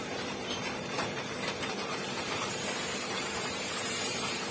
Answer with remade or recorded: remade